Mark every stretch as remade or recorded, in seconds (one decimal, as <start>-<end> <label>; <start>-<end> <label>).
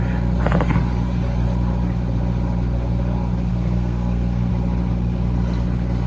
0.0-3.5 recorded; 3.5-4.5 remade; 4.5-6.1 recorded